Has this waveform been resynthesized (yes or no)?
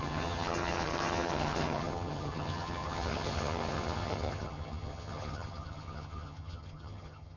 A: yes